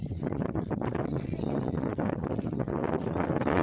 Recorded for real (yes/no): no